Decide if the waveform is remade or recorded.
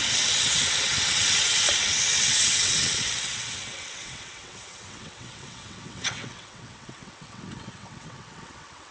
remade